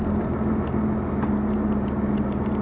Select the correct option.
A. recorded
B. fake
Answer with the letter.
A